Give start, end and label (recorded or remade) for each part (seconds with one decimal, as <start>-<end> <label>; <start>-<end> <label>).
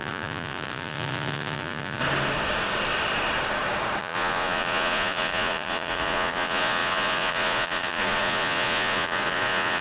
0.0-2.0 remade; 2.0-4.0 recorded; 4.0-9.8 remade